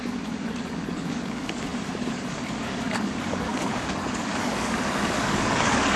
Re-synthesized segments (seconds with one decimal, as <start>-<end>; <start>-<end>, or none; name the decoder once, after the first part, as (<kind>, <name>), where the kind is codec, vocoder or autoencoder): 0.0-6.0 (codec, DAC)